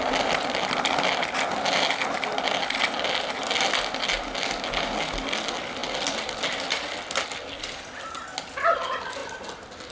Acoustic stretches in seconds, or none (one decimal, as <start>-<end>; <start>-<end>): 0.0-9.9